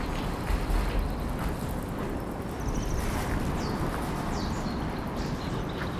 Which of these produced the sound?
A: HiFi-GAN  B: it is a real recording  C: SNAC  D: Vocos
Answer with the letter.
B